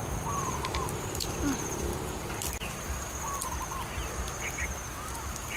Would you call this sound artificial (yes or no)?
no